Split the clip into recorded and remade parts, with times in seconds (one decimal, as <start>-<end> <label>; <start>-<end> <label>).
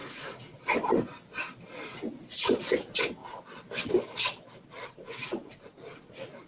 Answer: 0.0-0.6 remade; 0.6-4.8 recorded; 4.8-6.1 remade; 6.1-6.5 recorded